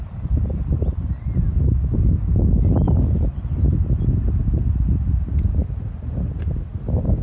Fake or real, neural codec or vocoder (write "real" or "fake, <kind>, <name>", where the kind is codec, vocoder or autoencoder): real